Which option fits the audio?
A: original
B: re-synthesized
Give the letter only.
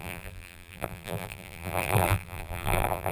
B